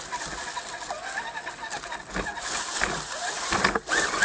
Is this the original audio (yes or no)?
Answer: yes